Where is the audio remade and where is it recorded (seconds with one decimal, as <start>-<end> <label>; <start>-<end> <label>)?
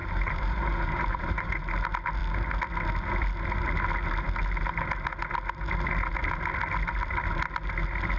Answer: 0.0-1.5 remade; 1.5-8.2 recorded